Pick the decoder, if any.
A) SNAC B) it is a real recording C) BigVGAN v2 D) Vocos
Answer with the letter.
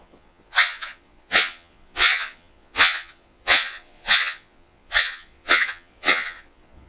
D